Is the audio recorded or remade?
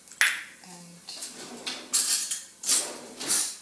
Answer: recorded